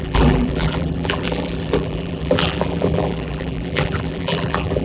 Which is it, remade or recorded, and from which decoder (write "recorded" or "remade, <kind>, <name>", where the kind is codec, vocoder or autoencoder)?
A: remade, vocoder, BigVGAN v2